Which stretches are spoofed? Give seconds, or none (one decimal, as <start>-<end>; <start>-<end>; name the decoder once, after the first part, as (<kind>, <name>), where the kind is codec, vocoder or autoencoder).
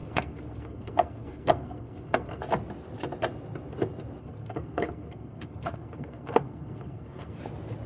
0.0-2.4 (codec, SNAC); 4.2-7.4